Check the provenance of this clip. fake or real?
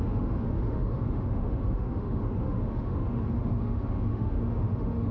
fake